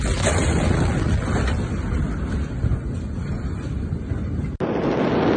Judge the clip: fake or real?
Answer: real